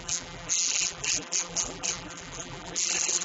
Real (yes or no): no